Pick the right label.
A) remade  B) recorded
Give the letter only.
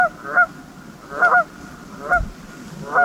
B